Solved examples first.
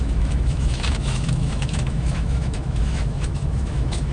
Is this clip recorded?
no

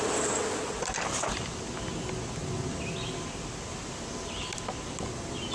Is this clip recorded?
yes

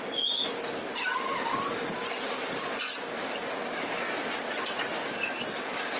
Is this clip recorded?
yes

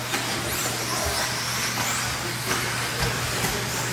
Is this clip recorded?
yes